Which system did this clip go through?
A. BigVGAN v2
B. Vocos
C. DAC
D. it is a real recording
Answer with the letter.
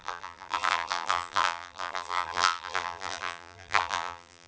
A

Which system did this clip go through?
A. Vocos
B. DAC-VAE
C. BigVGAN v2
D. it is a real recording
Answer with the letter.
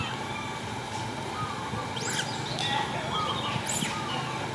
D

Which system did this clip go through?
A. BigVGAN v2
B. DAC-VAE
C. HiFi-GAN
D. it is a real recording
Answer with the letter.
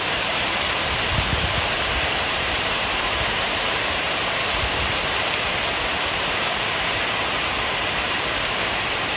A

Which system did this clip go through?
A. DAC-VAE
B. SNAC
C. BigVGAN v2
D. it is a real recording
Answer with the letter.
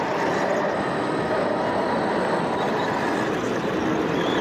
D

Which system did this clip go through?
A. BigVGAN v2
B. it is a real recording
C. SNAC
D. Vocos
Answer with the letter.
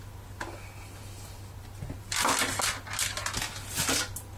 B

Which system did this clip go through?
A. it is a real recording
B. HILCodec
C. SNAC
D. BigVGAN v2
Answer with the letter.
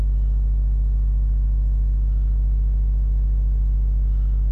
A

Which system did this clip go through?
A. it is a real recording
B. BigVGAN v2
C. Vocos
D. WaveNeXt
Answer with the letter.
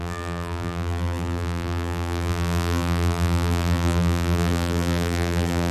B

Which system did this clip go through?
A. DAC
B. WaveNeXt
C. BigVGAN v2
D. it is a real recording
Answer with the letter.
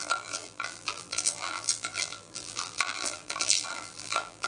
C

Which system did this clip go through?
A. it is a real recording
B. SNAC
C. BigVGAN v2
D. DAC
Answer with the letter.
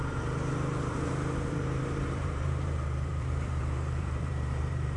C